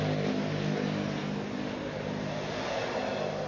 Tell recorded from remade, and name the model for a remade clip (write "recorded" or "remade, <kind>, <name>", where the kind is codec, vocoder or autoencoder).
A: recorded